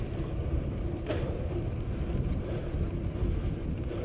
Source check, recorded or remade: recorded